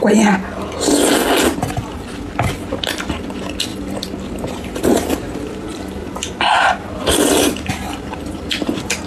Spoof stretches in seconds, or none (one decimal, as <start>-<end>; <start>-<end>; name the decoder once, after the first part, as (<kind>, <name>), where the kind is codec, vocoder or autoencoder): 3.7-4.7 (vocoder, BigVGAN v2); 5.7-9.1